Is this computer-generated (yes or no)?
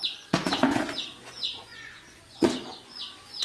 yes